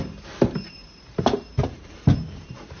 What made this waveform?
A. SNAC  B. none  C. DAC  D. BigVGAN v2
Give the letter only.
D